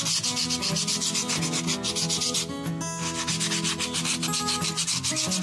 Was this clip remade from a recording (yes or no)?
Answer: no